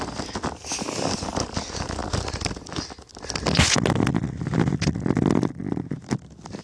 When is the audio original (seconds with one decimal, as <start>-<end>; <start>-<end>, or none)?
0.0-6.6